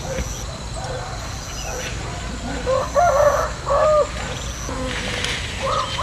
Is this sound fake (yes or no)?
no